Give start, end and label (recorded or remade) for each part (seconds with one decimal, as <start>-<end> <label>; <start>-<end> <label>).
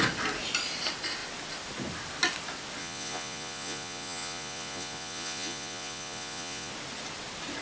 0.0-2.8 recorded; 2.8-6.7 remade; 6.7-7.6 recorded